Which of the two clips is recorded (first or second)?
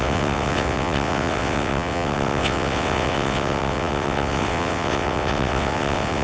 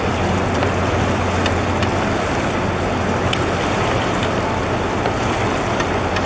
second